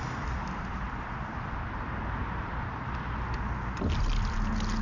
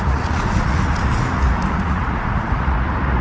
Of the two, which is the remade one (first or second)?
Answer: second